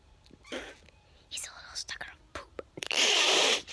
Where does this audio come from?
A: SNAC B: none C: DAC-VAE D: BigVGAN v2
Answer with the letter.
D